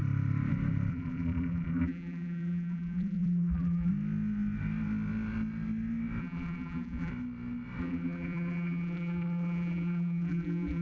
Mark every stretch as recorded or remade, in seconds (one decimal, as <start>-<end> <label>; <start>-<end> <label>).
0.0-0.9 recorded; 0.9-3.9 remade; 3.9-6.2 recorded; 6.2-7.1 remade; 7.1-7.8 recorded; 7.8-10.8 remade